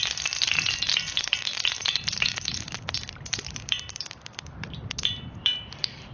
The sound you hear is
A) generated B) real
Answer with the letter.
A